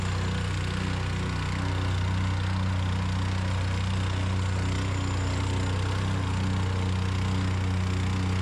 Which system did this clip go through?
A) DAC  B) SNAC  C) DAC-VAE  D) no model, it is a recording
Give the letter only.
D